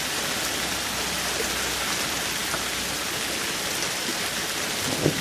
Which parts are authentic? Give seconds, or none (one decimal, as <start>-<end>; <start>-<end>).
0.0-5.2